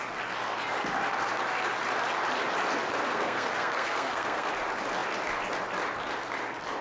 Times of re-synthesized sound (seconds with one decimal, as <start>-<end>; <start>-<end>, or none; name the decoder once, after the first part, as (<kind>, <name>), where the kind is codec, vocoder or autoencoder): 3.1-4.5 (codec, SNAC)